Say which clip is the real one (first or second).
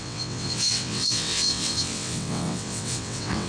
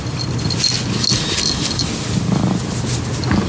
second